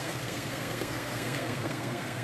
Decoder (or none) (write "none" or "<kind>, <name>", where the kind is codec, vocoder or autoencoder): codec, SNAC